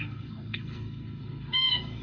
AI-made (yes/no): yes